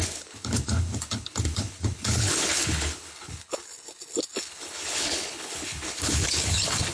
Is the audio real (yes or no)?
no